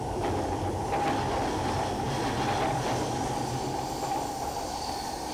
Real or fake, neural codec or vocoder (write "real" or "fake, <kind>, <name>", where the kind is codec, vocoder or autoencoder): real